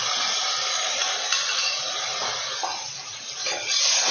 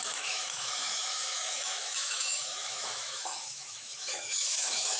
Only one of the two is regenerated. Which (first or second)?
second